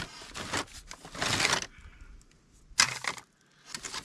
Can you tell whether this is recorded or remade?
recorded